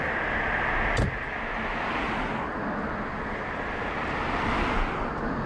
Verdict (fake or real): real